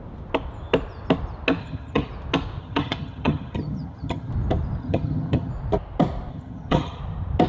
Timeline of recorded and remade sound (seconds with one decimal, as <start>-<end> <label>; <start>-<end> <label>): 0.0-1.6 recorded; 1.6-2.1 remade; 2.1-2.6 recorded; 2.6-4.3 remade; 4.3-4.8 recorded; 4.8-5.5 remade; 5.5-6.3 recorded; 6.3-7.0 remade; 7.0-7.5 recorded